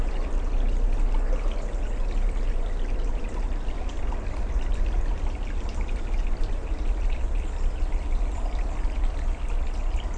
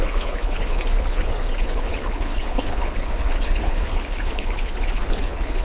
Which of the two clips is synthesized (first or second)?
second